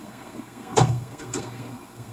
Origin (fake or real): fake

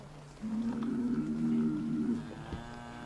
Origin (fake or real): real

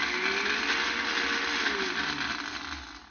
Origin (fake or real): real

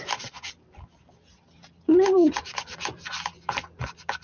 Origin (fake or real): real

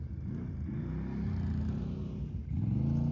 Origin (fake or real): real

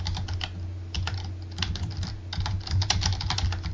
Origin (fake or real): real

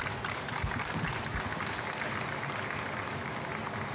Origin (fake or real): real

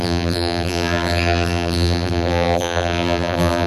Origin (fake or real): fake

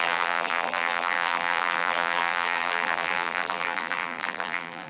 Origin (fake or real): fake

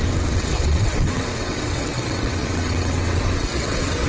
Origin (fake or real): fake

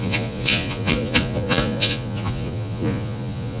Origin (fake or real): fake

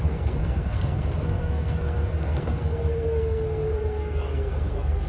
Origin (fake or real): fake